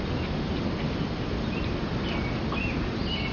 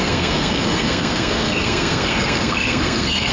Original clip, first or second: first